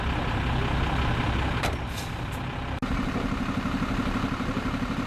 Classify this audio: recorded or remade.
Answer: recorded